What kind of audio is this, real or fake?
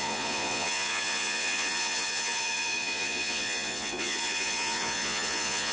fake